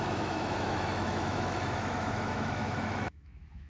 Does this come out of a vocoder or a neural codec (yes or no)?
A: yes